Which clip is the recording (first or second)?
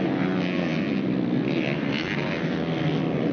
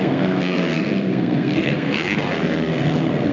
first